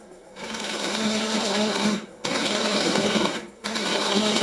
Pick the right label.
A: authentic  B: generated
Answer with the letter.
B